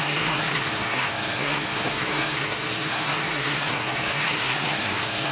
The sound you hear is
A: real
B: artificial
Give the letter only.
B